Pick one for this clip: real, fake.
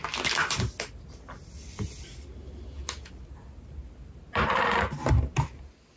real